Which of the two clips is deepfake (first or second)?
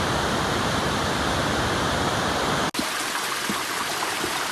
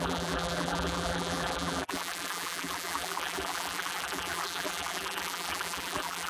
second